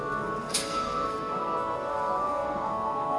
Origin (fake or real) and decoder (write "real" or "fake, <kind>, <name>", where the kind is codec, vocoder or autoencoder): fake, codec, SNAC